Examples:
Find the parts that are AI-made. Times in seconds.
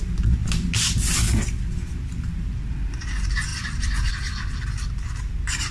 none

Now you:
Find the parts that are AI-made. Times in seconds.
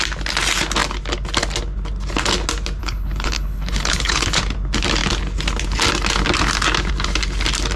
2.8-4.4 (codec, HILCodec)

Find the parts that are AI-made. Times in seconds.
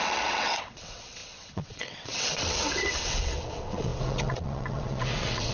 0.0-5.5 (vocoder, WaveNeXt)